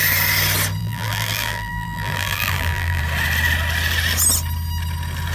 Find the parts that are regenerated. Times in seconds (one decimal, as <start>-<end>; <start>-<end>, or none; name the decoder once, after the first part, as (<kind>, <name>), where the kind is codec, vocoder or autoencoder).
0.8-3.0 (vocoder, BigVGAN v2)